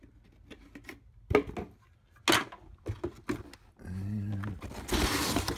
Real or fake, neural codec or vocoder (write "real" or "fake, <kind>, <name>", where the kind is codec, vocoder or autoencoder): real